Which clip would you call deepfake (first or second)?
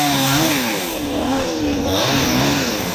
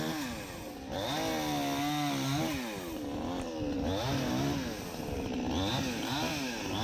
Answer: first